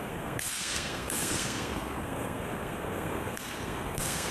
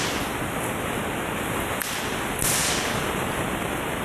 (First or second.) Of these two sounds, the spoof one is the first